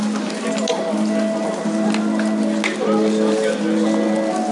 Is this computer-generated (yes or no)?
no